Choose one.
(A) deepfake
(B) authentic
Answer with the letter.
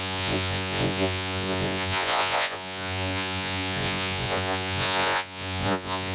A